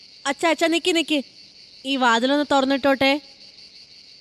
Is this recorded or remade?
recorded